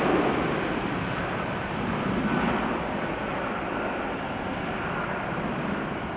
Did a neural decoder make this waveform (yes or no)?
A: no